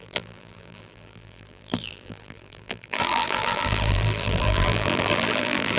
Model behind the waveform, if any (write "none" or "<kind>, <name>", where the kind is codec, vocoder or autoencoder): vocoder, BigVGAN v2